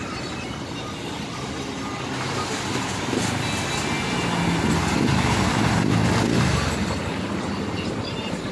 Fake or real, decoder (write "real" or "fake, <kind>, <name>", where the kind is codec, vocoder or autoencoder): real